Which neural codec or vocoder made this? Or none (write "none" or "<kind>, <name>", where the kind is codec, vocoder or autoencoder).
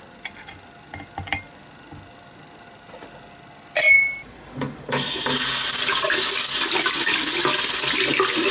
none